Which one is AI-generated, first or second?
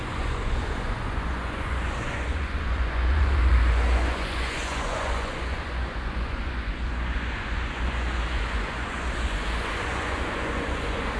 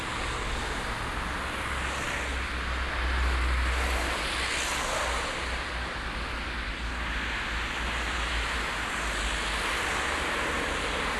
first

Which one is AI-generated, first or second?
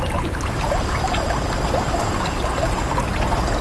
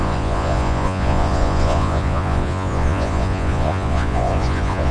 second